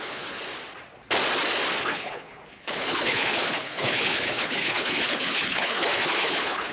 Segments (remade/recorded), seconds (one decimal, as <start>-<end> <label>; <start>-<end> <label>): 0.0-0.4 remade; 0.4-1.8 recorded; 1.8-6.7 remade